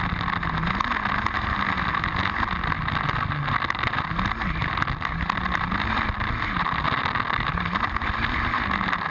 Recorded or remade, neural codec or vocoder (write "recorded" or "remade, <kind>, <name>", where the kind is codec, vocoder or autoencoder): recorded